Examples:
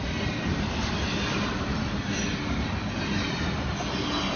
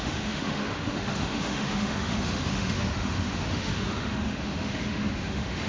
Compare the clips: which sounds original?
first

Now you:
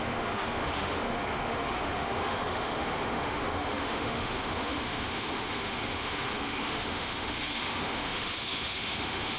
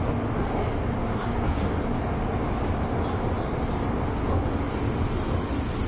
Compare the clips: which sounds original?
second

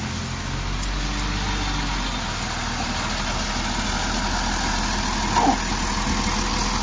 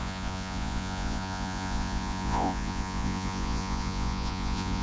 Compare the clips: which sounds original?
first